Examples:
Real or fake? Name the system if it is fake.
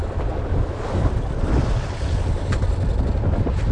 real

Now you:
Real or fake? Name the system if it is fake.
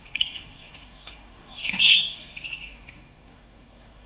fake, codec, SNAC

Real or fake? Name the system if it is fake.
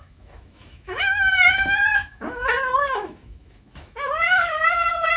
fake, autoencoder, DAC-VAE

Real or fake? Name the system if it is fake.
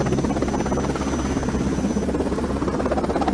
real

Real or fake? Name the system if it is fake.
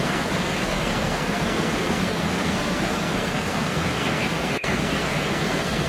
fake, codec, SNAC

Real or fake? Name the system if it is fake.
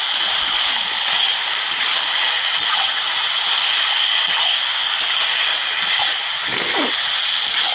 real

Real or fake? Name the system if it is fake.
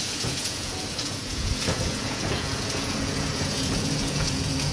fake, vocoder, Vocos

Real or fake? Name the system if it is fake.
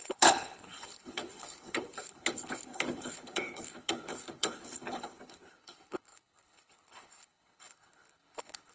fake, codec, HILCodec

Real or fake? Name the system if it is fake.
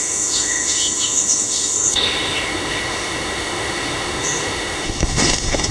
fake, autoencoder, DAC-VAE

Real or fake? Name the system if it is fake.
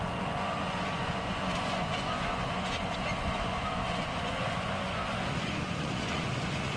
fake, vocoder, Vocos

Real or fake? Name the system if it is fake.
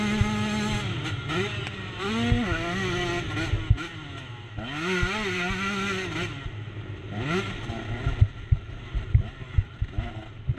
real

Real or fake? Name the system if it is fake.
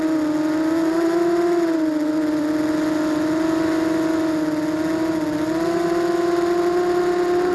real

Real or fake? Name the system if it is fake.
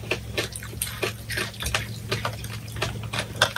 real